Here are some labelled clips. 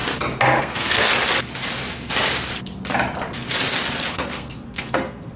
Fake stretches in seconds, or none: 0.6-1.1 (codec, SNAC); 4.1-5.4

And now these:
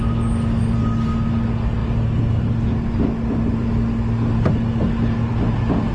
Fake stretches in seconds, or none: none

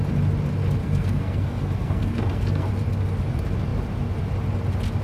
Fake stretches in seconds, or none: 0.8-2.7 (codec, SNAC)

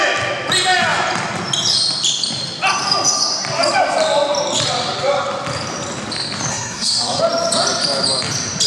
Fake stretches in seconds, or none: 6.5-7.2 (codec, SNAC)

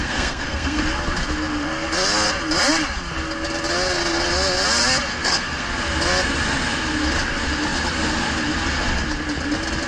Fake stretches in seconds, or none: 0.0-0.8 (codec, SNAC); 5.1-5.6